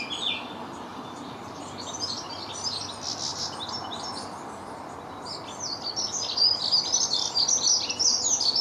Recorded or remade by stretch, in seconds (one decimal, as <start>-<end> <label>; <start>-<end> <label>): 0.0-0.9 recorded; 0.9-1.6 remade; 1.6-3.3 recorded; 3.3-4.1 remade; 4.1-8.6 recorded